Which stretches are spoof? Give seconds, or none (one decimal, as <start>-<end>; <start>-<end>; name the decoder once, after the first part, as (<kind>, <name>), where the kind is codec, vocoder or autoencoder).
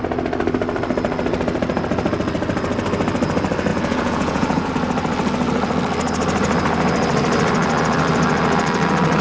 3.7-4.7 (vocoder, Vocos)